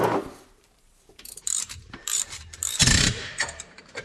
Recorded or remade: remade